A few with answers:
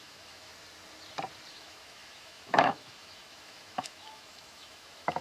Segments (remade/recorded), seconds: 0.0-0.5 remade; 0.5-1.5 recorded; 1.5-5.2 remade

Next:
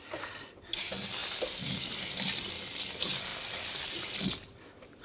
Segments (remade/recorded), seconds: 0.0-5.0 recorded

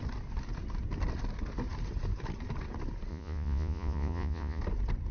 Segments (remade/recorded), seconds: 0.0-3.1 recorded; 3.1-4.6 remade; 4.6-5.1 recorded

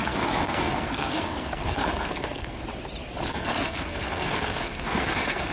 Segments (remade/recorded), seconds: 0.0-2.6 remade; 2.6-3.3 recorded; 3.3-5.5 remade

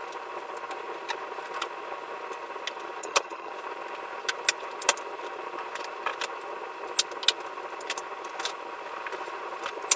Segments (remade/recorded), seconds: 0.0-3.0 recorded; 3.0-3.5 remade; 3.5-10.0 recorded

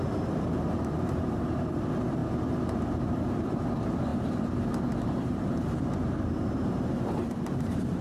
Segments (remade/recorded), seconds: 0.0-2.2 remade; 2.2-3.0 recorded; 3.0-8.0 remade